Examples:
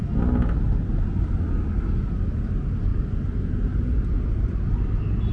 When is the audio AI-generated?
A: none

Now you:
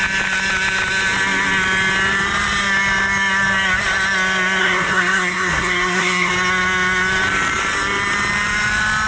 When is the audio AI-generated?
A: 4.6-6.3 (codec, SNAC)